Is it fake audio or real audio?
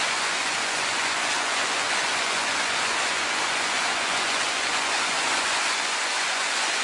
fake